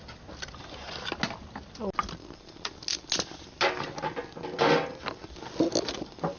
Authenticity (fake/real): real